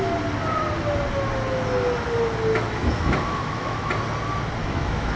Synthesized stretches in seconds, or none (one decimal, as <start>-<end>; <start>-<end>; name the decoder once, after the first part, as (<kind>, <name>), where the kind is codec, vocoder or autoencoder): 2.5-3.9 (autoencoder, DAC-VAE); 4.6-5.2